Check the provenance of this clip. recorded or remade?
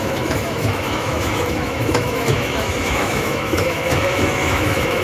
remade